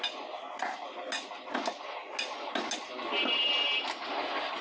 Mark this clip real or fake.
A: real